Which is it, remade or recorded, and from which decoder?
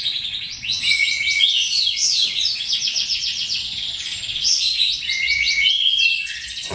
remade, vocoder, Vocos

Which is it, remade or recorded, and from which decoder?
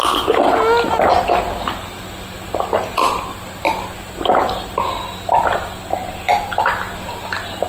recorded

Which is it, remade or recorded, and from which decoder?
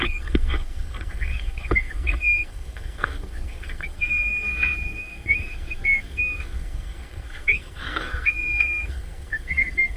remade, codec, SNAC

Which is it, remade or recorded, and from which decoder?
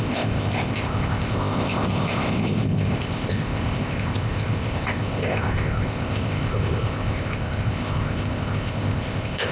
remade, codec, ZipCodec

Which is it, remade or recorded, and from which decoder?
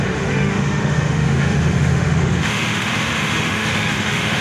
remade, autoencoder, DAC-VAE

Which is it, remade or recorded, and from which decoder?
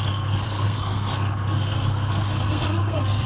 remade, codec, SNAC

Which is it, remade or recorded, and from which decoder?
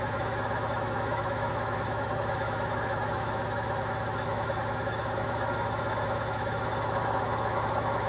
remade, autoencoder, DAC-VAE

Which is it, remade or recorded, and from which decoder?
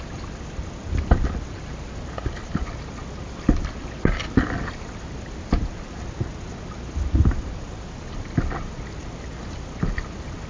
recorded